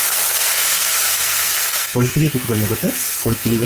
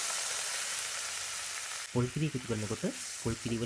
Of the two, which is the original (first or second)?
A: second